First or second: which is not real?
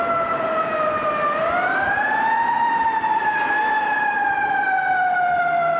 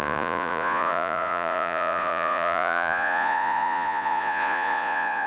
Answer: second